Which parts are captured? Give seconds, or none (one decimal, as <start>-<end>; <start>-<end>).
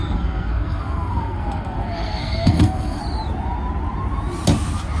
3.0-5.0